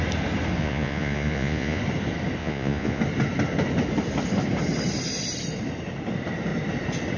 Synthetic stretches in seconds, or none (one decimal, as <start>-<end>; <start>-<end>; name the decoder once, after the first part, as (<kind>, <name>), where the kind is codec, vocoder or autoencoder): 0.6-1.8 (vocoder, Vocos); 2.4-3.0